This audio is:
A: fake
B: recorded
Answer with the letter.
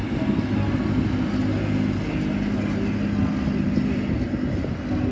B